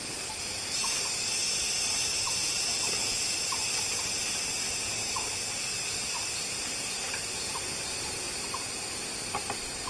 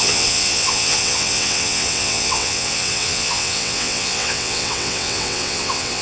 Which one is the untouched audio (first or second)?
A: first